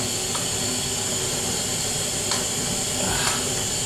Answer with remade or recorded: recorded